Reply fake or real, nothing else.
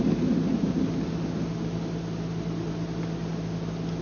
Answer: real